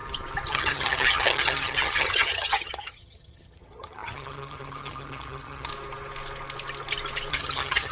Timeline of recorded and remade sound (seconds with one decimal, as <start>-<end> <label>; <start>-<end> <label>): 0.0-0.5 recorded; 0.5-5.7 remade; 5.7-7.3 recorded; 7.3-7.9 remade